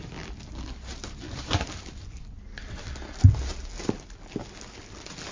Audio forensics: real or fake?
real